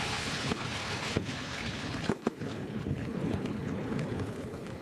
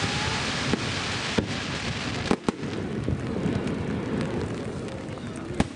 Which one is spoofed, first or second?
first